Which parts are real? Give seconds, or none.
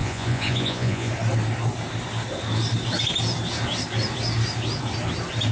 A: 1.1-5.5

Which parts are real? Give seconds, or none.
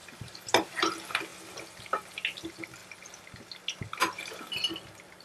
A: 0.8-5.2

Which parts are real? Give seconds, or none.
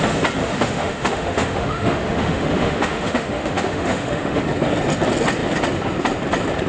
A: 0.0-0.4; 4.4-6.7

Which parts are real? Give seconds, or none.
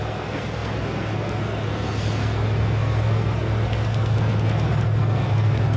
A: none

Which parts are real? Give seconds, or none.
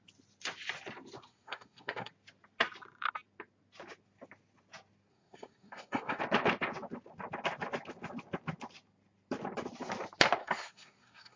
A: 0.0-1.3; 2.1-5.1; 6.2-10.4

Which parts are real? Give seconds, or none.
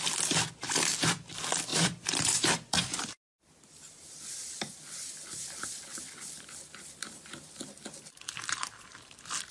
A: 0.0-1.7; 4.8-5.4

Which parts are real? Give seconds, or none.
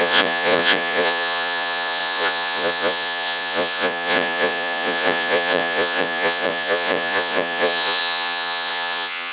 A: none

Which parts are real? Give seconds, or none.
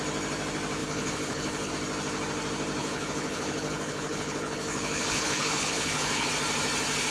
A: 0.0-0.8; 1.7-2.8; 6.3-7.1